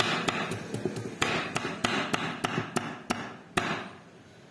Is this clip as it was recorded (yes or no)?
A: yes